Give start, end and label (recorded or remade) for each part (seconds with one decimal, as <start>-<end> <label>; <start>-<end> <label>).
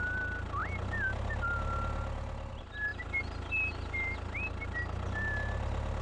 0.0-6.0 recorded